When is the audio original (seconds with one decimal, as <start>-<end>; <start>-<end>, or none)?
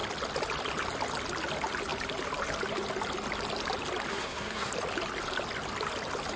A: 0.0-4.1; 4.7-6.4